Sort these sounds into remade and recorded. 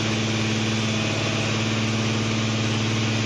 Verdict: recorded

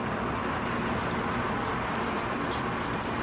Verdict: recorded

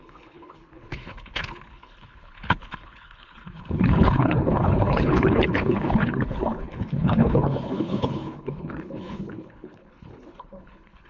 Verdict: remade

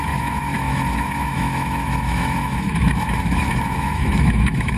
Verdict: remade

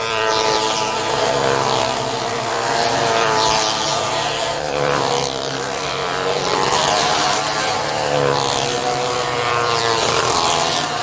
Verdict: remade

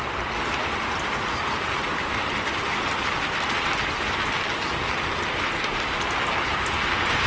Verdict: recorded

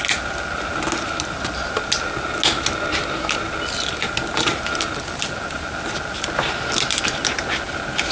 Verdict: recorded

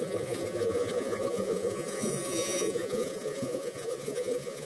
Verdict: remade